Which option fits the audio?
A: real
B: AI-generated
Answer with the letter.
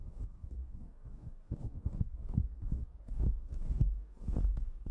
B